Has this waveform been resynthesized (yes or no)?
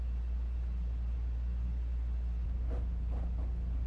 no